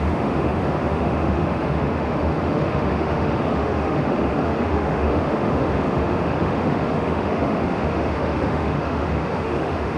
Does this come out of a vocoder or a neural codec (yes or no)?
yes